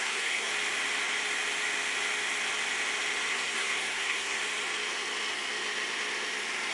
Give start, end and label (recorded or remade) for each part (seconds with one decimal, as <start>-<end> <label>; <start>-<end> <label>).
0.0-0.5 remade; 0.5-3.3 recorded; 3.3-4.4 remade; 4.4-6.7 recorded